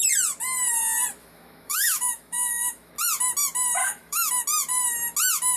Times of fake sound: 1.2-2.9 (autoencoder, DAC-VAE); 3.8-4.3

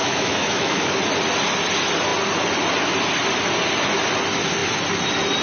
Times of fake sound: 0.0-0.9 (autoencoder, DAC-VAE)

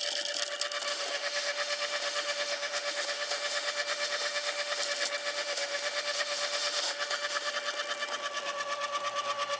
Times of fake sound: 0.9-4.8 (autoencoder, DAC-VAE); 5.2-7.5

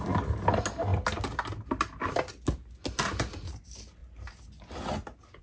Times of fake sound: none

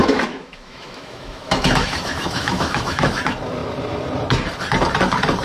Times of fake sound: 0.0-3.2 (autoencoder, DAC-VAE)

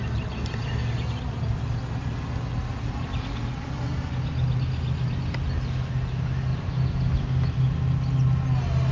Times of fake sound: none

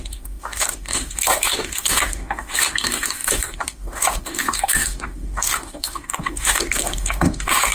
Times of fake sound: 0.0-7.7 (autoencoder, DAC-VAE)

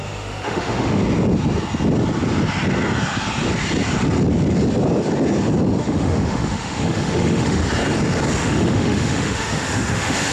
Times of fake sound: 0.0-1.0 (autoencoder, DAC-VAE); 5.8-7.6; 8.4-10.3